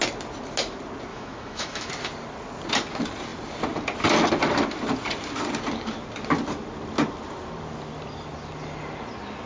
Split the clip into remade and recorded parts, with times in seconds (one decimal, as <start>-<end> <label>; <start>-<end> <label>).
0.0-1.1 recorded; 1.1-1.9 remade; 1.9-9.5 recorded